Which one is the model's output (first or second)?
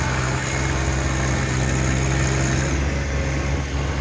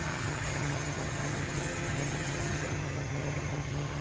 second